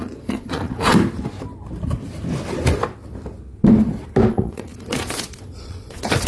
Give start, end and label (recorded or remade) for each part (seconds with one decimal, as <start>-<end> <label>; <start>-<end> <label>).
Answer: 0.0-0.9 remade; 0.9-4.3 recorded; 4.3-6.3 remade